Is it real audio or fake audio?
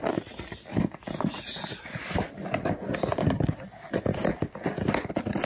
real